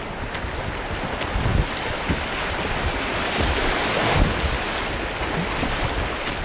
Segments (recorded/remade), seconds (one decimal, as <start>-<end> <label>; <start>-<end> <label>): 0.0-6.4 recorded